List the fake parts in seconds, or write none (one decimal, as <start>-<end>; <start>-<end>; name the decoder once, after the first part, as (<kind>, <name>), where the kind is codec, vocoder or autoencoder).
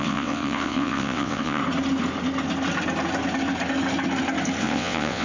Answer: 0.0-1.6 (vocoder, WaveNeXt); 4.6-5.2